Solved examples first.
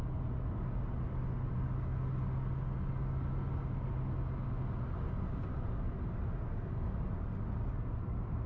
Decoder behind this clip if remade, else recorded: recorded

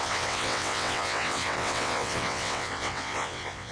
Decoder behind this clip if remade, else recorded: remade, vocoder, WaveNeXt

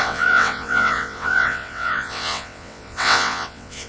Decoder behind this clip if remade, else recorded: remade, vocoder, WaveNeXt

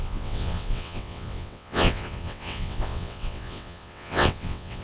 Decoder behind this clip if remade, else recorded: remade, vocoder, WaveNeXt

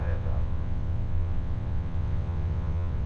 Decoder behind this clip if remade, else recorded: remade, vocoder, WaveNeXt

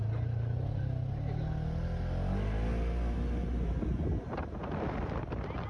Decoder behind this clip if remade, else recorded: recorded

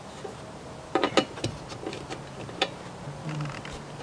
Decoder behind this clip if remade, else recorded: recorded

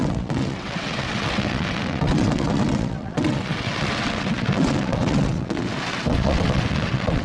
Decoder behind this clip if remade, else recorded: remade, vocoder, WaveNeXt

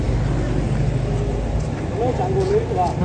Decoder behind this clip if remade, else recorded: recorded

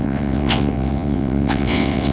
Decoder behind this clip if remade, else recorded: remade, vocoder, WaveNeXt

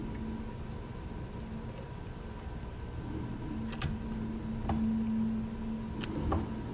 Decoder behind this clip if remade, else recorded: recorded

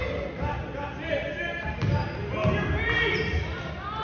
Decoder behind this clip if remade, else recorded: recorded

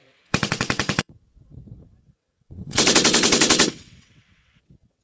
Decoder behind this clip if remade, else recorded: remade, vocoder, WaveNeXt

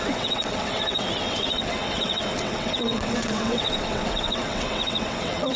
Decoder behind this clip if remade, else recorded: remade, vocoder, WaveNeXt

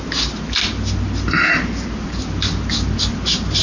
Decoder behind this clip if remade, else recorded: recorded